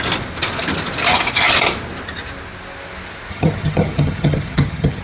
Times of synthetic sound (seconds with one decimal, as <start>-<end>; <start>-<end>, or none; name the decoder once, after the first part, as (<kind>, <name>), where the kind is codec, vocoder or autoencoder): 3.3-5.0 (vocoder, HiFi-GAN)